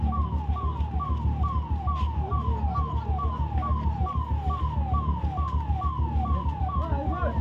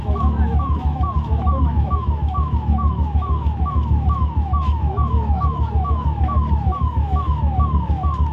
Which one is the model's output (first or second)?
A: second